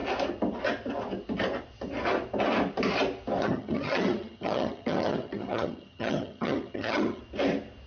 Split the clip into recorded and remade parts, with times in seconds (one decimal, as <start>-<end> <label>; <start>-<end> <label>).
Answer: 0.0-3.4 recorded; 3.4-7.2 remade; 7.2-7.9 recorded